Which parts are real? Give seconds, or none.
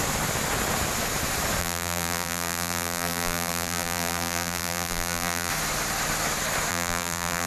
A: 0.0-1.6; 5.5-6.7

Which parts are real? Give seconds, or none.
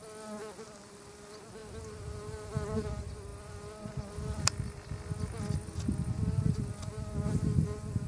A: 0.0-8.1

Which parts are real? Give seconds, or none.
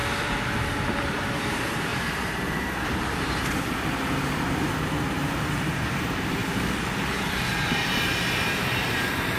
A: 6.4-7.5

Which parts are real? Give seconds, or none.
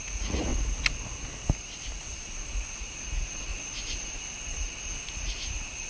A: 0.5-2.0; 3.5-4.1; 4.5-5.1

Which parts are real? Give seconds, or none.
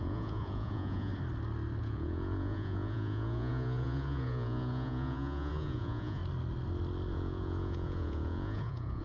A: 1.1-1.8; 6.2-7.1